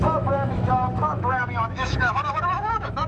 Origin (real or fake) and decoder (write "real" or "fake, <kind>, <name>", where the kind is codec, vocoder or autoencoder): fake, autoencoder, DAC-VAE